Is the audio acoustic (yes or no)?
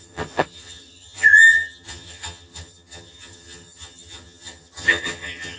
no